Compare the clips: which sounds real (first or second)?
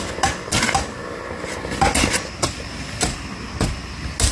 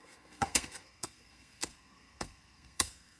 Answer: first